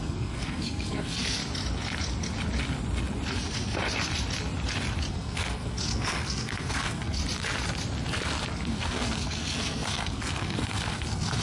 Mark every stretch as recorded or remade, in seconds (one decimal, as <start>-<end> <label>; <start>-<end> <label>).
0.0-1.4 remade; 1.4-5.1 recorded; 5.1-7.2 remade; 7.2-8.6 recorded; 8.6-11.4 remade